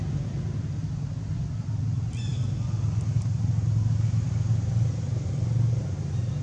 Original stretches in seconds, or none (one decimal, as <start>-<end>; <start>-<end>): 0.0-6.4